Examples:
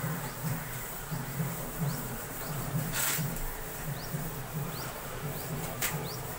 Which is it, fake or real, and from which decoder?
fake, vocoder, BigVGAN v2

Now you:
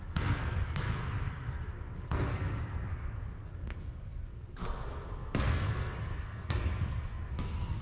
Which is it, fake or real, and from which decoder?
fake, codec, SNAC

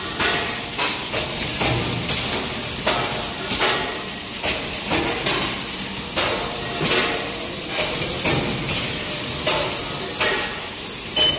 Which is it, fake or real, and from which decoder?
real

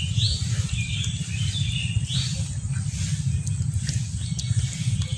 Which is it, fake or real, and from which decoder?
real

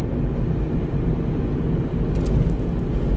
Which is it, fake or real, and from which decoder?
real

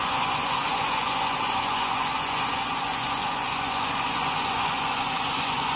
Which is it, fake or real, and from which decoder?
fake, vocoder, Vocos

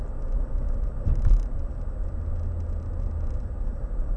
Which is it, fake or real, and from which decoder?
real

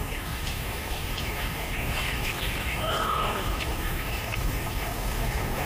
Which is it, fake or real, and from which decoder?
fake, codec, DAC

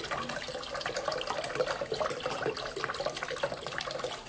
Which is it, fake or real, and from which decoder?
real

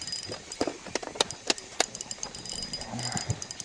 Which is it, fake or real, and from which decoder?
real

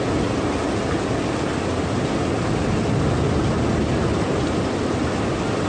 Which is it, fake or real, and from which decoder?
real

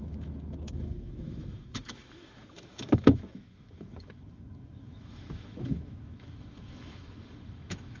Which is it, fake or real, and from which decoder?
fake, autoencoder, DAC-VAE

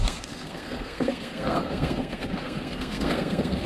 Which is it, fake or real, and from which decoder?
fake, codec, SNAC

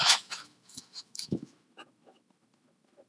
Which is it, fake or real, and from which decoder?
fake, autoencoder, DAC-VAE